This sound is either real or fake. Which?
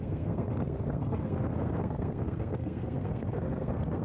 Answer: fake